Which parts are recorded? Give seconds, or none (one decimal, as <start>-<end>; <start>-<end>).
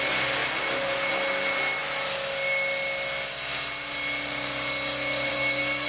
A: 0.0-5.9